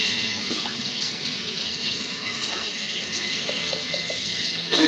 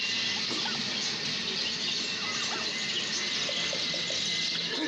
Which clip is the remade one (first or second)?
first